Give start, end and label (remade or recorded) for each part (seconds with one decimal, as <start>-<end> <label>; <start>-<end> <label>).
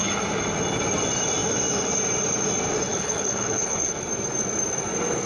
0.0-2.9 recorded; 2.9-3.9 remade; 3.9-5.3 recorded